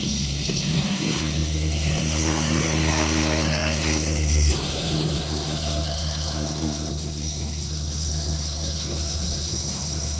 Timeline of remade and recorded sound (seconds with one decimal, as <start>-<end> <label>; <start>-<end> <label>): 0.0-10.2 remade